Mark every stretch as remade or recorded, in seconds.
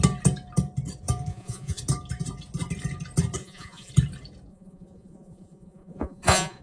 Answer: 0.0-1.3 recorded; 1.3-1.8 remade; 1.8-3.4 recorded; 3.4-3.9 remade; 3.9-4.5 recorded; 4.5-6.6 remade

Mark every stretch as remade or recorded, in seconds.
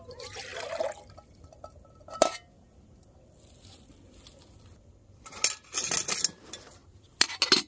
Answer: 0.0-7.7 recorded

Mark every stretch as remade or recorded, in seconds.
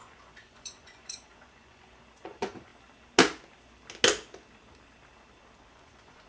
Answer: 0.0-2.7 remade; 2.7-5.7 recorded; 5.7-6.3 remade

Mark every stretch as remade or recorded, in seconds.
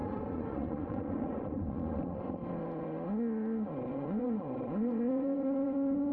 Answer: 0.0-2.2 remade; 2.2-3.9 recorded; 3.9-6.1 remade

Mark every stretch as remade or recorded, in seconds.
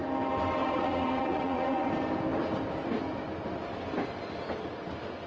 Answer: 0.0-0.6 recorded; 0.6-1.9 remade; 1.9-5.3 recorded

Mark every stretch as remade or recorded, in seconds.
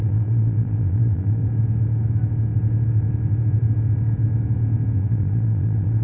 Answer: 0.0-1.4 remade; 1.4-5.0 recorded; 5.0-6.0 remade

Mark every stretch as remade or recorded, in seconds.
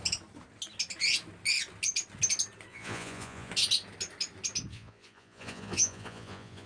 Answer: 0.0-2.7 recorded; 2.7-3.5 remade; 3.5-4.7 recorded; 4.7-6.7 remade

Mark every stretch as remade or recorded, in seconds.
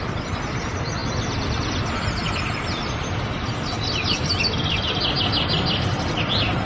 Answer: 0.0-6.7 recorded